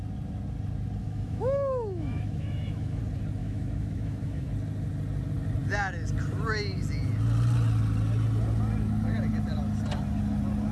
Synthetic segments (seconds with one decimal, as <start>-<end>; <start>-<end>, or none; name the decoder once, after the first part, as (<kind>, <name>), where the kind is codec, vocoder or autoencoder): 1.0-3.0 (autoencoder, DAC-VAE); 3.4-4.5